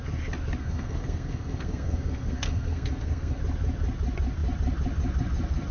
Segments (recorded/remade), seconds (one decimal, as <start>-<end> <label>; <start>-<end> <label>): 0.0-0.6 recorded; 0.6-3.4 remade; 3.4-5.7 recorded